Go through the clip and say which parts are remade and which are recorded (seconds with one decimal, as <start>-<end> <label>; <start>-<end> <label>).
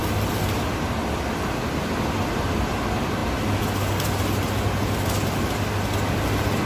0.0-6.7 recorded